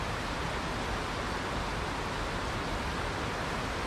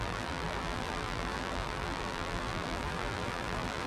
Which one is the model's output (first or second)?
second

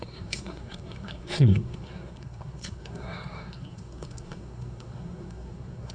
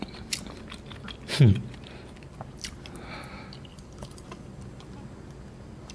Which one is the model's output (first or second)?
first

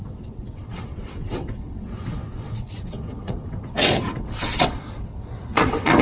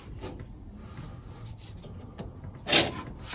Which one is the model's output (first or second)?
first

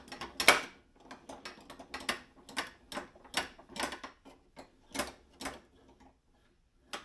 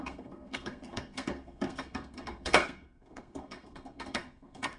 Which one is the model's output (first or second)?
second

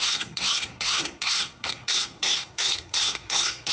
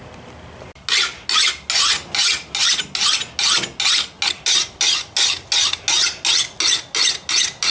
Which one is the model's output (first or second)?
first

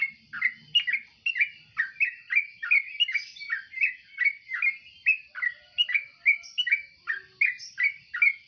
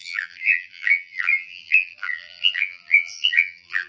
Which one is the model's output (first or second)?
second